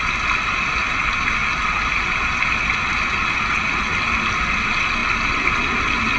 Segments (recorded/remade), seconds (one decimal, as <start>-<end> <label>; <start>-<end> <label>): 0.0-6.2 recorded